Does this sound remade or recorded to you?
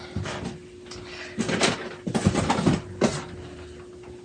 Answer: recorded